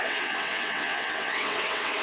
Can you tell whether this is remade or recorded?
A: remade